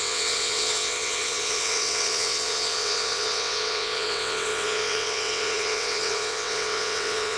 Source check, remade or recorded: remade